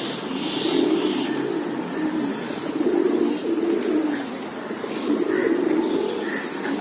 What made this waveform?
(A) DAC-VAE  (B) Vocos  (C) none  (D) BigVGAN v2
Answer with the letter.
C